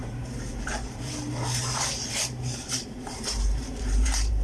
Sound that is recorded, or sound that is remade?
remade